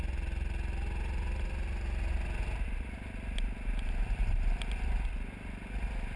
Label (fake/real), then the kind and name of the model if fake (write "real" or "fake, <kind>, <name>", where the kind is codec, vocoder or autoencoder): real